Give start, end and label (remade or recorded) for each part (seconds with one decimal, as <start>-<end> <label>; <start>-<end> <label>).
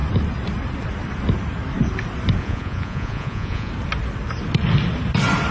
0.0-2.4 recorded; 2.4-3.7 remade; 3.7-5.5 recorded